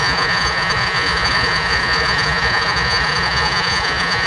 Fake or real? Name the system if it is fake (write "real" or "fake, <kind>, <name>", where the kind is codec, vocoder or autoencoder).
fake, vocoder, Vocos